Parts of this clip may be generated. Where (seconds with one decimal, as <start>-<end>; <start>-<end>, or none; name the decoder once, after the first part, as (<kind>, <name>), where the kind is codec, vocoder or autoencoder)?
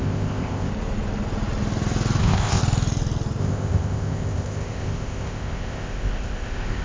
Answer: 0.0-0.7 (codec, ZipCodec); 2.2-2.6; 3.4-6.8